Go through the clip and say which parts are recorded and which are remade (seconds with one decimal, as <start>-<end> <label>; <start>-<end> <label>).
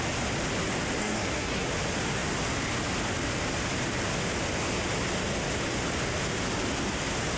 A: 0.0-1.0 recorded; 1.0-1.7 remade; 1.7-7.4 recorded